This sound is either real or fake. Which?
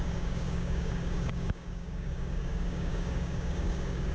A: fake